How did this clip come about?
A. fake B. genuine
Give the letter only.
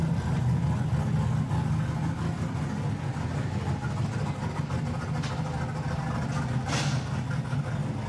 B